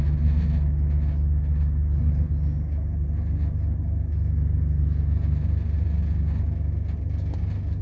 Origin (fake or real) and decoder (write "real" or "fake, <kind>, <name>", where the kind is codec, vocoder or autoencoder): real